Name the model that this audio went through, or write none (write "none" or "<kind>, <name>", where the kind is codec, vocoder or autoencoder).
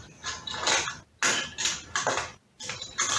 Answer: none